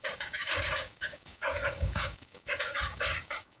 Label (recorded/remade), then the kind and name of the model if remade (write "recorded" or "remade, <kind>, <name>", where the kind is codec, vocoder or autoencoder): remade, codec, DAC